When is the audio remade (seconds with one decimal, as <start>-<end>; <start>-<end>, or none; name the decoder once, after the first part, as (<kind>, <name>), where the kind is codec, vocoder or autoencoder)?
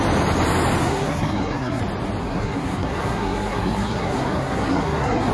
0.8-1.8 (codec, SNAC); 2.2-5.3